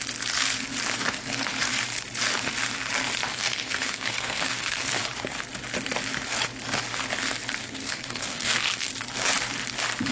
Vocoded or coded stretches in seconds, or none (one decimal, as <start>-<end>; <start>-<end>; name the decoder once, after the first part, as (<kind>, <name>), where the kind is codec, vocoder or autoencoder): 3.3-5.0 (codec, SNAC); 7.6-8.9